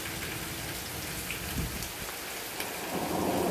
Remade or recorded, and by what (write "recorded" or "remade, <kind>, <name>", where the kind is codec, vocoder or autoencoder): recorded